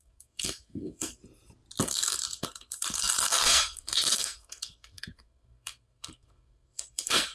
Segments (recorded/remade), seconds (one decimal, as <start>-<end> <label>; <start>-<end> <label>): 0.0-1.2 remade; 1.2-1.8 recorded; 1.8-7.3 remade